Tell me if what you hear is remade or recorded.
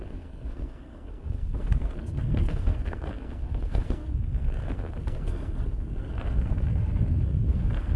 remade